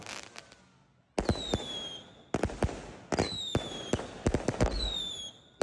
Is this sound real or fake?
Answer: real